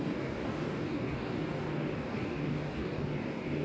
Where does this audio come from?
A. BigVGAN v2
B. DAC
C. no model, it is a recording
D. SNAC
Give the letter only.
B